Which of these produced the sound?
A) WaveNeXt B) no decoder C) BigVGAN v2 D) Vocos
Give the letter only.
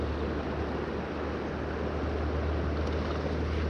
B